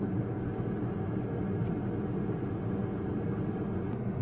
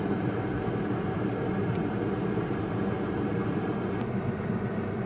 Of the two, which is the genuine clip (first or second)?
first